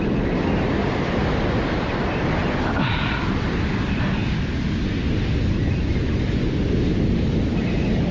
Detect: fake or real real